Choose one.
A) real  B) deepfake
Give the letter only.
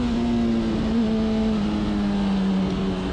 A